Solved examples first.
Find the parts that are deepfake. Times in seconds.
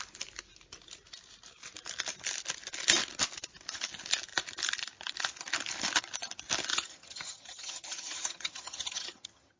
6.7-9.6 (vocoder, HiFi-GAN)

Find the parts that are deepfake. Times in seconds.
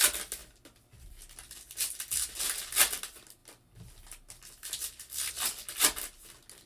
none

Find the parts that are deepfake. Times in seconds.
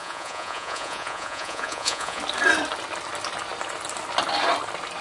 0.0-2.2 (vocoder, Vocos)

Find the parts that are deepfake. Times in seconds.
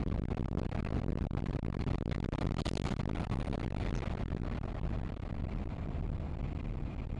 none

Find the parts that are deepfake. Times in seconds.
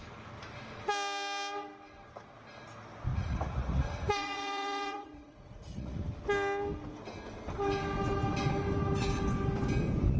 3.1-6.0 (vocoder, Vocos)